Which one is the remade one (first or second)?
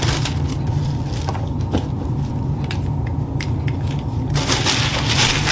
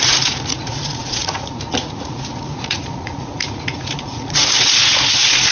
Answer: second